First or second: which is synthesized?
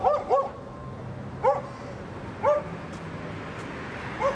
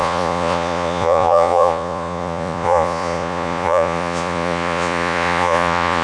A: second